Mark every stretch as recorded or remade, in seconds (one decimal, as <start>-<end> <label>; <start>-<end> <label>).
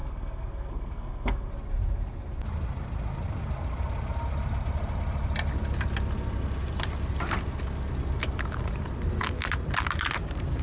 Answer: 0.0-1.5 remade; 1.5-10.6 recorded